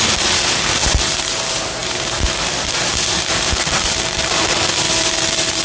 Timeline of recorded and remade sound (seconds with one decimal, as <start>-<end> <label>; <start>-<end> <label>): 0.0-5.6 recorded